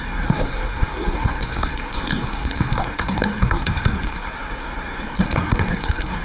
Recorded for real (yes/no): no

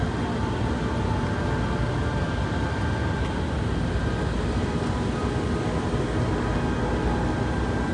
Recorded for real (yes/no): yes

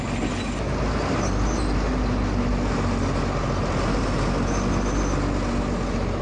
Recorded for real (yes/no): yes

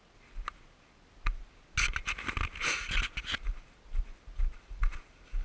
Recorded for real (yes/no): yes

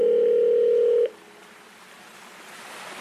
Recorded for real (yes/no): yes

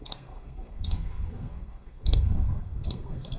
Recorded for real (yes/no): no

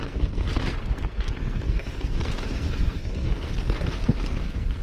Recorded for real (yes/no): no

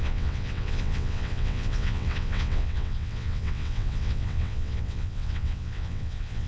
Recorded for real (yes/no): no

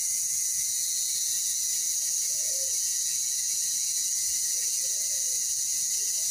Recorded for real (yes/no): no